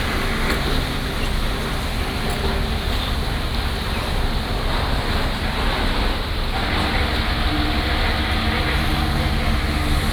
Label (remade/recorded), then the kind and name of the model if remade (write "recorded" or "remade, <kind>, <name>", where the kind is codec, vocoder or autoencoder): recorded